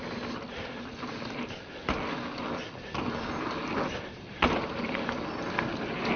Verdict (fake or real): real